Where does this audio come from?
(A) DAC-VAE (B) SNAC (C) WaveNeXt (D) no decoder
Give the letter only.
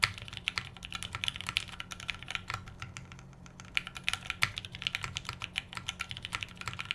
D